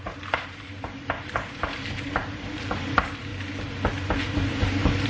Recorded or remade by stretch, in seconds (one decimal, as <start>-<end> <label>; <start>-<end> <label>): 0.0-3.3 remade; 3.3-5.1 recorded